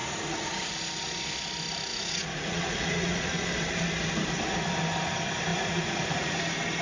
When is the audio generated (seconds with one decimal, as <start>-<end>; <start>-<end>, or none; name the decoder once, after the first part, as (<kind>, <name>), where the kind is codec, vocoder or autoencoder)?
0.0-0.7 (vocoder, Vocos); 1.9-3.5; 5.5-6.3